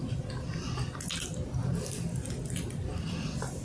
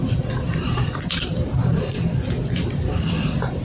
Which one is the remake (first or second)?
second